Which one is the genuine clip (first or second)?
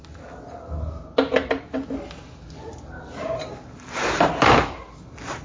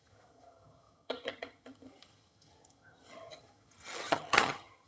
first